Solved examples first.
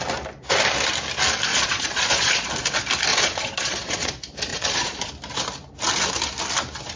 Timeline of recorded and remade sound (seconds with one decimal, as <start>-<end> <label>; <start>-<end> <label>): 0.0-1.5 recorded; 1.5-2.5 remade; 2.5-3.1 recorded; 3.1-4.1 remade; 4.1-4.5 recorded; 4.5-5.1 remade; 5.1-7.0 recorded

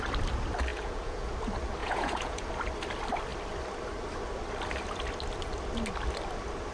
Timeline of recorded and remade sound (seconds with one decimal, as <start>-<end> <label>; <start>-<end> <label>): 0.0-0.7 recorded; 0.7-1.3 remade; 1.3-1.8 recorded; 1.8-2.5 remade; 2.5-6.7 recorded

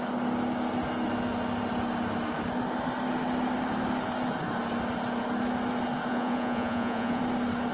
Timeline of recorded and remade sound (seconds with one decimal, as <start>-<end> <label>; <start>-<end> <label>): 0.0-6.1 recorded; 6.1-7.2 remade; 7.2-7.7 recorded